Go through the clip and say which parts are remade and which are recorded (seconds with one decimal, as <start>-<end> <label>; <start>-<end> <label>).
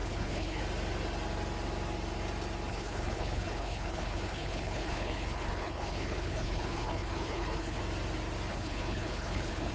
0.0-0.6 remade; 0.6-2.7 recorded; 2.7-7.8 remade; 7.8-8.5 recorded; 8.5-9.7 remade